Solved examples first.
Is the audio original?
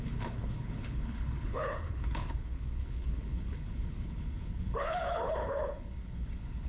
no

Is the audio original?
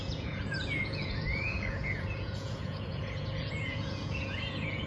no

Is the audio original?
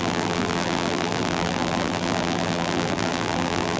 no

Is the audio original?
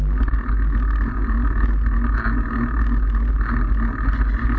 yes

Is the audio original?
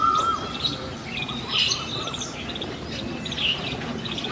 yes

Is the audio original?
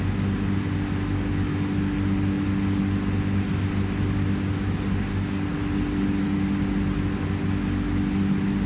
yes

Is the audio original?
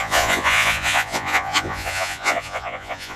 no